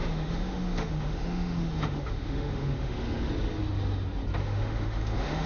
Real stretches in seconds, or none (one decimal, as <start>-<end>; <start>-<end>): 3.3-4.4